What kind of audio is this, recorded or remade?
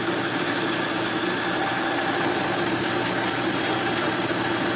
recorded